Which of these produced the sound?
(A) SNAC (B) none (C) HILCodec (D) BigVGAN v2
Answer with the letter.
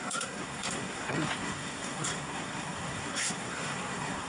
A